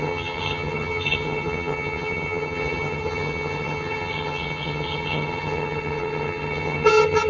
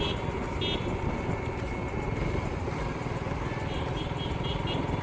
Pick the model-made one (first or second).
first